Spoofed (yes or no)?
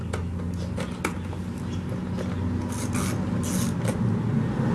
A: no